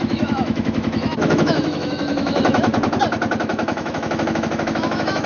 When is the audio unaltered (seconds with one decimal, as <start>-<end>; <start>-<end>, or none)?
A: 2.7-3.4